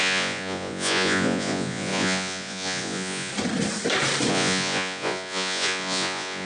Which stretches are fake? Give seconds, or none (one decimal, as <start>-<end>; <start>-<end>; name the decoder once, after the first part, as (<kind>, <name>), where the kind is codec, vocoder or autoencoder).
0.0-3.3 (vocoder, Vocos); 4.3-6.4